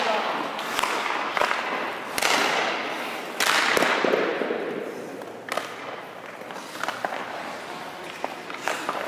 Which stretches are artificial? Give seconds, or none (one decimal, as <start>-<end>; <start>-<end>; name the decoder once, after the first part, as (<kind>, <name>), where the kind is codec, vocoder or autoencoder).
none